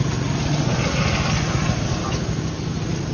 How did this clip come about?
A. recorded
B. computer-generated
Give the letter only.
A